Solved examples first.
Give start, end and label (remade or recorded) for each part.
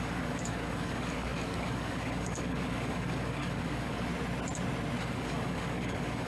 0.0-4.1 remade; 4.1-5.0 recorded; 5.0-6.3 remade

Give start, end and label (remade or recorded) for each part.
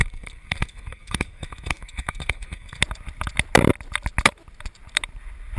0.0-2.8 remade; 2.8-5.6 recorded